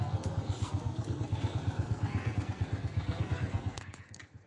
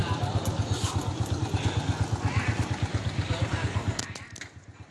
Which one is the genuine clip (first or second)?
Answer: second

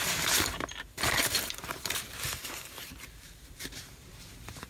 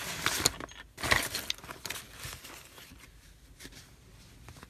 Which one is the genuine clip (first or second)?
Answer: second